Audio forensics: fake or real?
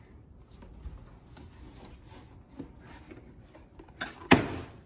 real